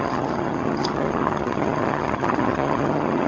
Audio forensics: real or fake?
fake